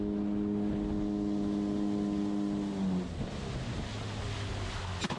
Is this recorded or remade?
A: recorded